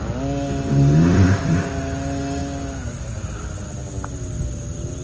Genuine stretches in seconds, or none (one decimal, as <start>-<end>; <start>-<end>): 0.0-1.1; 1.7-5.0